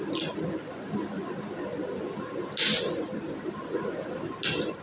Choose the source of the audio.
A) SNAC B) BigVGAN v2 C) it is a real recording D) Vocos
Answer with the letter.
C